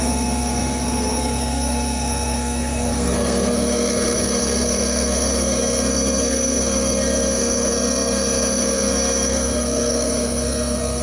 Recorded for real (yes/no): no